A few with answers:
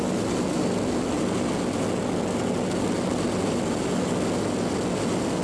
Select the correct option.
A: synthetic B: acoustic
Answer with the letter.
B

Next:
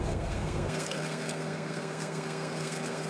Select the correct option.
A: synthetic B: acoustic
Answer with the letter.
A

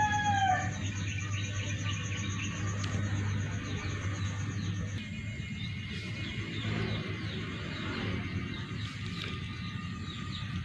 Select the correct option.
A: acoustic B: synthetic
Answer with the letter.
A